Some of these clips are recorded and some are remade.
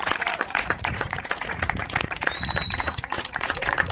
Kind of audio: remade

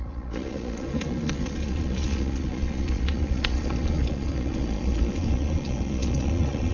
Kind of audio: remade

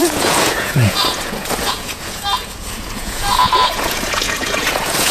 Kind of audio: remade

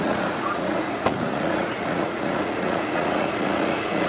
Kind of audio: remade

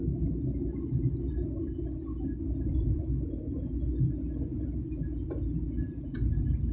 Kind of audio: recorded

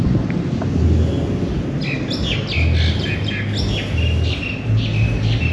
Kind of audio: recorded